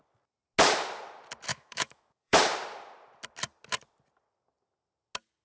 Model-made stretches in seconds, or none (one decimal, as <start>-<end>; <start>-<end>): 1.5-2.4